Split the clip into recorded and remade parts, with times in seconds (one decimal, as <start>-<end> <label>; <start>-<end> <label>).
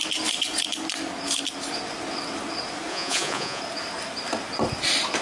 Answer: 0.0-2.9 recorded; 2.9-3.6 remade; 3.6-5.2 recorded